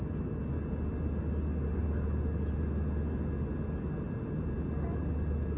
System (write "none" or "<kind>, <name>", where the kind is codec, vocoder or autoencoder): none